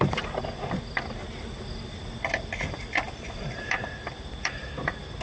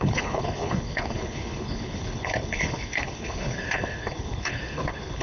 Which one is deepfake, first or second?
second